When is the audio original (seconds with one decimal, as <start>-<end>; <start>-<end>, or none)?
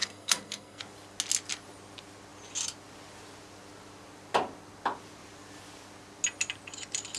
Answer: 0.8-7.2